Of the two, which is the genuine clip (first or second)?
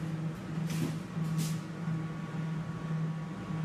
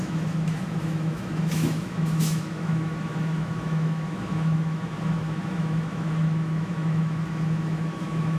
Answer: first